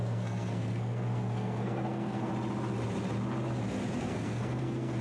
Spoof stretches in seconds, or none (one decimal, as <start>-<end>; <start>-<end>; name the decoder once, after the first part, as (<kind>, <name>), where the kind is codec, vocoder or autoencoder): 0.0-2.3 (codec, SNAC); 4.0-5.0